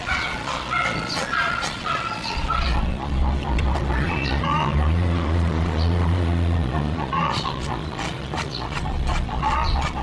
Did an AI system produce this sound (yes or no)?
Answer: yes